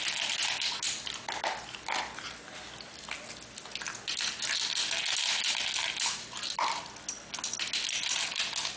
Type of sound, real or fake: real